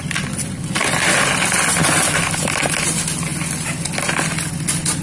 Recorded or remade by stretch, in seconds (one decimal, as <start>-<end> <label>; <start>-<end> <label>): 0.0-5.0 recorded